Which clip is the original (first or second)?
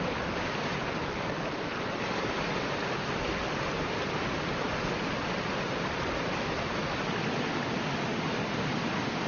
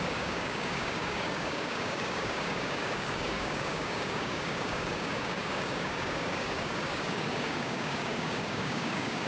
first